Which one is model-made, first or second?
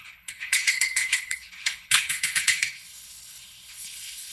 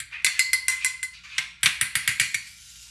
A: first